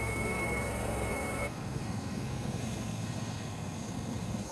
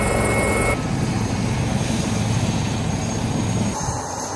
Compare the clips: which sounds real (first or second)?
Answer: second